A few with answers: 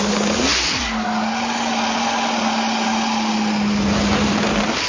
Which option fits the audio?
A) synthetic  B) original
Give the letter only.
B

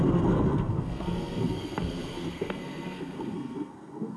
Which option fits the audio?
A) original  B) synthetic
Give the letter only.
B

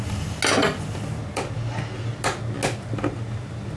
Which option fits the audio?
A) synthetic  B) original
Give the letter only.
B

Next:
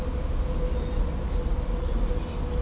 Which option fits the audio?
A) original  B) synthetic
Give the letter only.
A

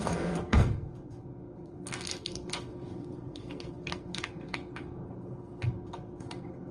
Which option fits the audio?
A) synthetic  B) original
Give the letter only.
A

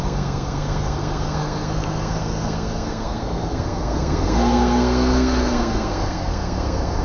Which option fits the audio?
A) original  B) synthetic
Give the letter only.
B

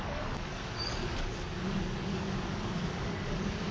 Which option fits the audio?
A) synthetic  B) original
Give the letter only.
A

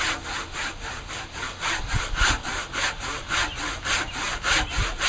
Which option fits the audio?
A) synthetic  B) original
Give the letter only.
B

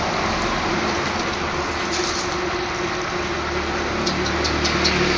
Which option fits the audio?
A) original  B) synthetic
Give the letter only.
A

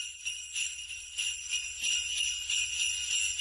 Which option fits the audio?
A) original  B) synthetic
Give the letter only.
A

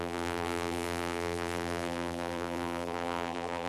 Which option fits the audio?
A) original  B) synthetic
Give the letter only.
B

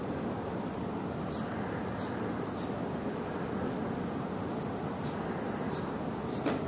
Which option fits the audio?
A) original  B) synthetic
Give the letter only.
A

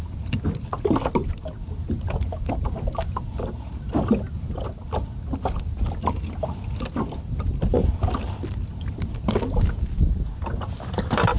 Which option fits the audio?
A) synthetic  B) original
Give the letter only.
B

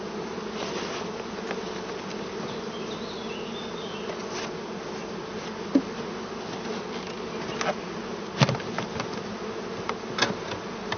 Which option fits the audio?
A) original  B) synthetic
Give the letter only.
A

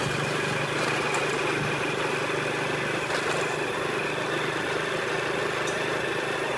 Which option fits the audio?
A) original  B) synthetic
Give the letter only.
A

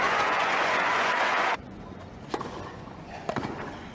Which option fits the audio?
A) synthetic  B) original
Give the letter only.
A